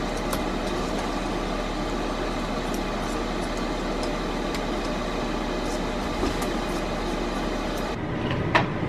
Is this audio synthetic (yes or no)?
yes